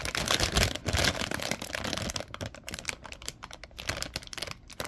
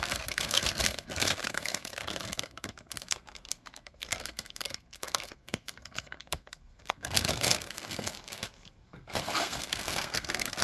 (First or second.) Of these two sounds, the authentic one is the first